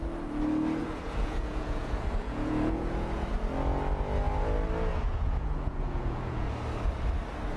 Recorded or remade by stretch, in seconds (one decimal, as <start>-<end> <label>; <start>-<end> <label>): 0.0-0.8 recorded; 0.8-3.3 remade; 3.3-4.9 recorded; 4.9-6.5 remade; 6.5-7.6 recorded